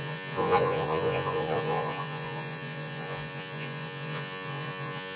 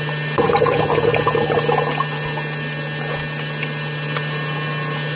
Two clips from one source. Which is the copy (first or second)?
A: first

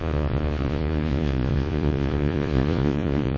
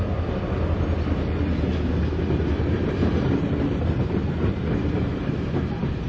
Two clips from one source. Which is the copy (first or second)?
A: first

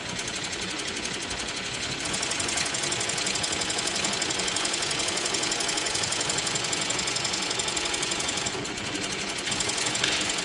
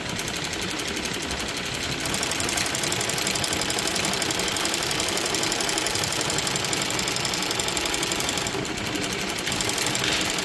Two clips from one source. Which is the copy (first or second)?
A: first